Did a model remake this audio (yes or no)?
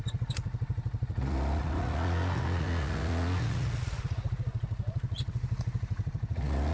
yes